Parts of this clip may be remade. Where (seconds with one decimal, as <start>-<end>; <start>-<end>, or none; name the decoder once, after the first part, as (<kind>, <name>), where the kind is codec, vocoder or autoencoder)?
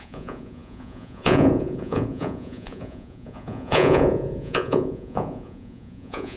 0.0-6.4 (vocoder, Vocos)